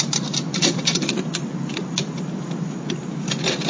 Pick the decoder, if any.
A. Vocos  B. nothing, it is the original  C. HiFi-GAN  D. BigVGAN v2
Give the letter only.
B